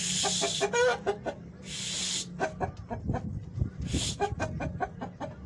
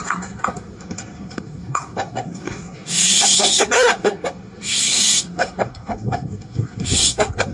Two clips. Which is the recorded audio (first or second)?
first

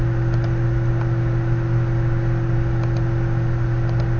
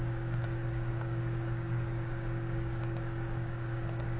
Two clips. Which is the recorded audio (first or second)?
first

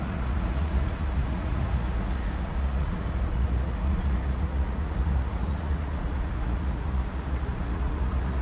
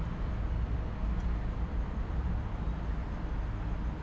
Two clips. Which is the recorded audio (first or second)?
second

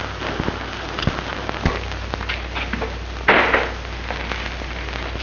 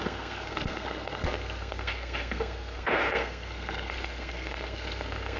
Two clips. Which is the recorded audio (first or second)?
first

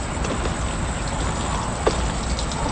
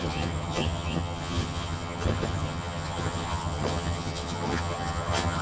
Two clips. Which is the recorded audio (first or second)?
first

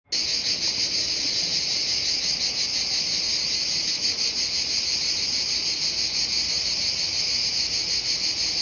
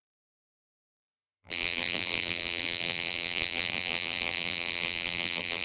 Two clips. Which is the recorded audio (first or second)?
first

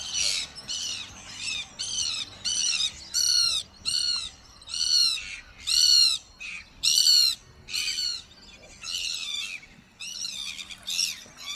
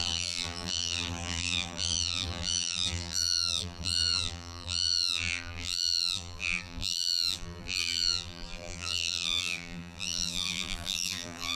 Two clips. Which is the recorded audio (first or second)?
first